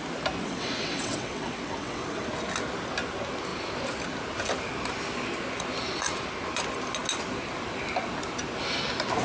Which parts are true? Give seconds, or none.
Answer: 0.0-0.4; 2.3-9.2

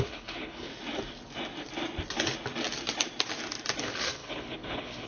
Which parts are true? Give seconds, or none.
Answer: 0.7-3.8

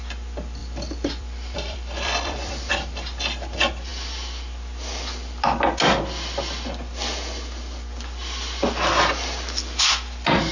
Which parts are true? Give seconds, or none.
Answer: 0.0-0.6; 2.7-10.5

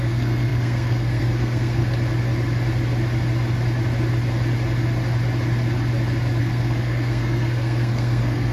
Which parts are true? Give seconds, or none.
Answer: 1.8-6.4

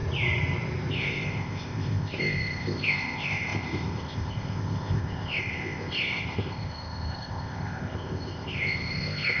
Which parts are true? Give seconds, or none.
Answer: 0.0-0.9

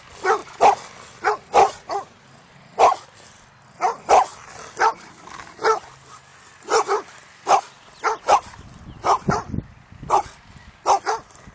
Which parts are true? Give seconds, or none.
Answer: 0.0-0.4; 2.5-6.3; 7.6-11.5

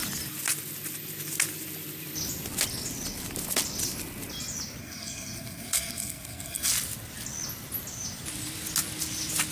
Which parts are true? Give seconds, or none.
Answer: 0.0-4.8; 6.7-9.5